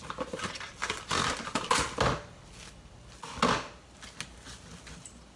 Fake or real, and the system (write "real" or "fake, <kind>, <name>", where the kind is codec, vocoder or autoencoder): real